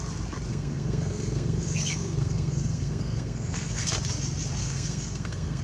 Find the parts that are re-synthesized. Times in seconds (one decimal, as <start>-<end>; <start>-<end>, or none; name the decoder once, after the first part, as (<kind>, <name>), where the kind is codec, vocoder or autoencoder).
0.5-3.9 (codec, SNAC); 4.6-5.6